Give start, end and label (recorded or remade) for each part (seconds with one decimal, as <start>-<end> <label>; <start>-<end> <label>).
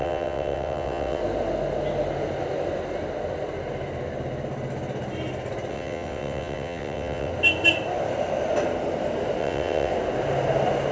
0.0-1.2 remade; 1.2-5.7 recorded; 5.7-7.3 remade; 7.3-9.4 recorded; 9.4-9.9 remade; 9.9-10.9 recorded